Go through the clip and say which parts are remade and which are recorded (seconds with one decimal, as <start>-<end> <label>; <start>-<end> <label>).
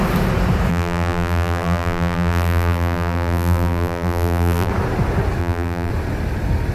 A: 0.0-0.7 recorded; 0.7-4.7 remade; 4.7-5.4 recorded; 5.4-5.9 remade; 5.9-6.7 recorded